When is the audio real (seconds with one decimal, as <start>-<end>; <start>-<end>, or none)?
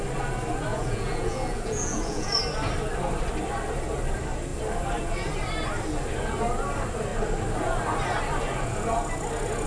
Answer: 0.0-0.7; 2.4-9.7